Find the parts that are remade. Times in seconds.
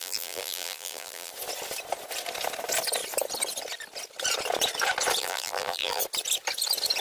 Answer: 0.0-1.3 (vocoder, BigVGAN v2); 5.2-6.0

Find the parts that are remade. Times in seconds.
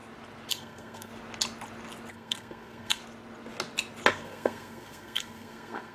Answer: 0.5-1.1 (codec, SNAC); 2.1-3.0; 4.1-5.9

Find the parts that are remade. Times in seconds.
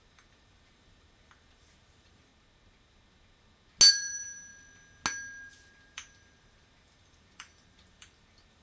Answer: 0.0-2.3 (vocoder, BigVGAN v2); 3.9-4.5; 5.5-8.6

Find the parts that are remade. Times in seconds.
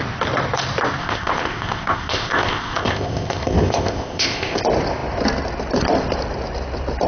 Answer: 1.0-4.6 (codec, ZipCodec)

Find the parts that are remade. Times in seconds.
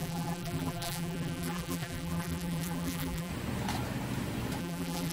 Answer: 0.0-3.3 (vocoder, BigVGAN v2); 4.6-5.1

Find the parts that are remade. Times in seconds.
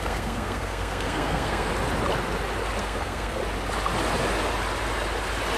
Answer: 0.0-1.7 (codec, SNAC); 2.8-3.4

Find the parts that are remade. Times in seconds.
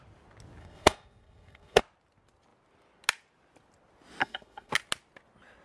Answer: 0.6-1.8 (codec, SNAC); 4.2-4.7